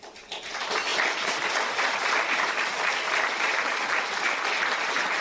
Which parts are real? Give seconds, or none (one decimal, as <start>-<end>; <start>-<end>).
0.0-5.2